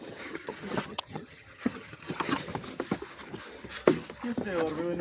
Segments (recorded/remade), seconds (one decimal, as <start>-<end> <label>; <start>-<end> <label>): 0.0-2.5 remade; 2.5-5.0 recorded